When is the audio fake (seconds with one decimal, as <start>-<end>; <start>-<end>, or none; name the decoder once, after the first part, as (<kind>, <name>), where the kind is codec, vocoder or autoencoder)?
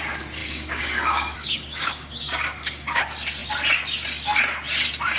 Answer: 0.4-3.0 (codec, DAC)